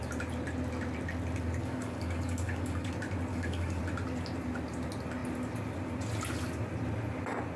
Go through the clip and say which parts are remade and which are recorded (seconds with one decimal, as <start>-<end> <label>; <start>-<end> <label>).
0.0-1.6 recorded; 1.6-2.9 remade; 2.9-3.3 recorded; 3.3-3.8 remade; 3.8-7.6 recorded

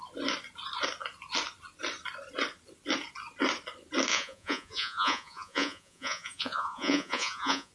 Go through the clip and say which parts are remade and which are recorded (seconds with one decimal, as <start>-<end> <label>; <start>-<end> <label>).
0.0-4.1 recorded; 4.1-7.7 remade